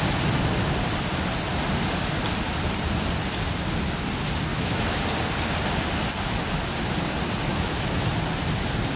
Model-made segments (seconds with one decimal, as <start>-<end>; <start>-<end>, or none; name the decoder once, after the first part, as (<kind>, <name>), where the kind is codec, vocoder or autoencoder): 4.5-5.0 (autoencoder, DAC-VAE); 7.5-8.1

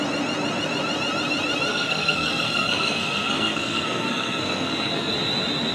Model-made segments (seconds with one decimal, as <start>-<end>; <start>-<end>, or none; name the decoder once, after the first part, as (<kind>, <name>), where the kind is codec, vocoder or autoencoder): 1.7-5.1 (codec, SNAC)

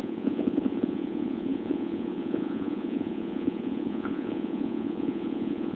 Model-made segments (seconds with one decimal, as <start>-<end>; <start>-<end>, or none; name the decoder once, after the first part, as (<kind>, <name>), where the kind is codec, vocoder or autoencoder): 0.0-5.8 (vocoder, Vocos)

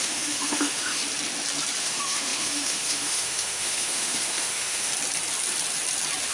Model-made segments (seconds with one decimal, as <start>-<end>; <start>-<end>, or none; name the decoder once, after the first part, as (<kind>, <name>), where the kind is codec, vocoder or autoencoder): 0.0-1.0 (autoencoder, DAC-VAE); 1.8-4.9

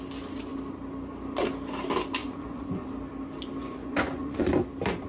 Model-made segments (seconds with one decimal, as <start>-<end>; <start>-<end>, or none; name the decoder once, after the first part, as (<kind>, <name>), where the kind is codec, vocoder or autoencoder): 2.2-2.9 (vocoder, Vocos); 3.6-4.5